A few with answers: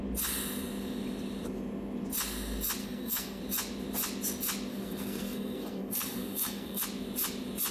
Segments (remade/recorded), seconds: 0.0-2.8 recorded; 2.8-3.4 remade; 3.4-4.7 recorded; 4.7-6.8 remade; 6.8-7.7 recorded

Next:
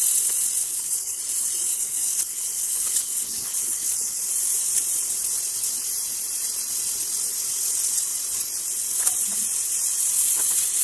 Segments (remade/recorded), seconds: 0.0-0.6 recorded; 0.6-1.2 remade; 1.2-1.7 recorded; 1.7-4.3 remade; 4.3-10.8 recorded

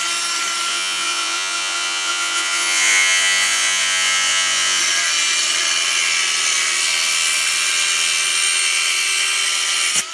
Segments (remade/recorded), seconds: 0.0-0.7 recorded; 0.7-4.8 remade; 4.8-10.1 recorded

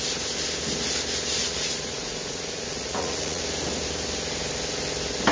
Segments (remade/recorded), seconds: 0.0-1.4 recorded; 1.4-3.4 remade; 3.4-5.3 recorded

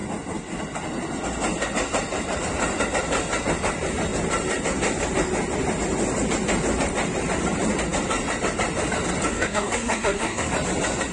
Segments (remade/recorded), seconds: 0.0-9.3 recorded; 9.3-10.5 remade; 10.5-11.1 recorded